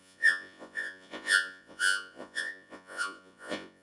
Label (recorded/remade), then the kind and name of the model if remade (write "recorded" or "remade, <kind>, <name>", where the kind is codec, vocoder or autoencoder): remade, vocoder, Vocos